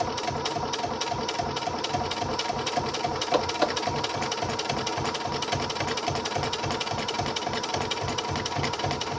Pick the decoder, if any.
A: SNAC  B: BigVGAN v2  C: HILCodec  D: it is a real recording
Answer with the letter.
D